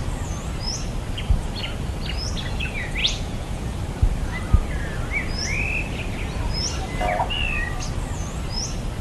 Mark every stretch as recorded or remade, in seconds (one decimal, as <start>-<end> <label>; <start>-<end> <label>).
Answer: 0.0-3.0 recorded; 3.0-3.6 remade; 3.6-9.0 recorded